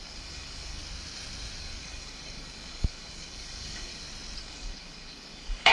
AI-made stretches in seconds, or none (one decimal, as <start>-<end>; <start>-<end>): 0.0-0.8; 1.6-3.9; 4.4-5.7